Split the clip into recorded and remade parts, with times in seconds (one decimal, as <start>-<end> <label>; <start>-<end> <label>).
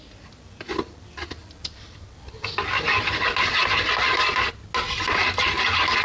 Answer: 0.0-6.0 recorded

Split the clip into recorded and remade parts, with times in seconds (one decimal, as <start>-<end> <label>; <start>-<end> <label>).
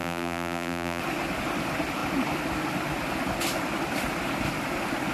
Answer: 0.0-1.0 remade; 1.0-5.1 recorded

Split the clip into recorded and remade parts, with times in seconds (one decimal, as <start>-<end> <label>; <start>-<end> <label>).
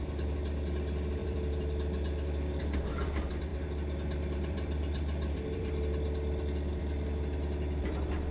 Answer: 0.0-1.2 recorded; 1.2-2.6 remade; 2.6-3.5 recorded; 3.5-6.8 remade; 6.8-8.3 recorded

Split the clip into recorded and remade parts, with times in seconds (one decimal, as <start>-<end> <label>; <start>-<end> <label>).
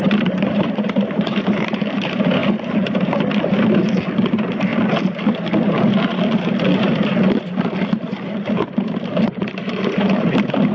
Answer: 0.0-2.4 remade; 2.4-4.1 recorded; 4.1-4.7 remade; 4.7-9.3 recorded; 9.3-10.7 remade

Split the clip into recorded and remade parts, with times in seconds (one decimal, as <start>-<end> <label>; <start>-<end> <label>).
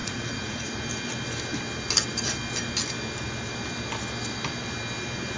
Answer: 0.0-0.8 remade; 0.8-5.4 recorded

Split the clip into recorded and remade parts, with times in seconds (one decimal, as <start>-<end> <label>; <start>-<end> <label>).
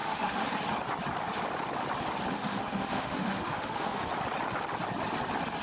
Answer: 0.0-0.5 remade; 0.5-2.3 recorded; 2.3-4.1 remade; 4.1-5.6 recorded